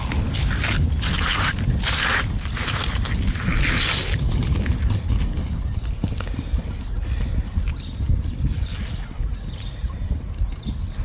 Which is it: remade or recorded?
recorded